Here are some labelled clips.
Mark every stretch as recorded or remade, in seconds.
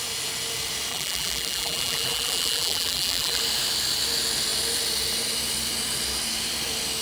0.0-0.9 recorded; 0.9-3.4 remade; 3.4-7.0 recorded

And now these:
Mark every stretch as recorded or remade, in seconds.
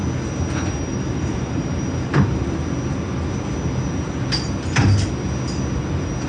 0.0-0.9 recorded; 0.9-1.8 remade; 1.8-6.3 recorded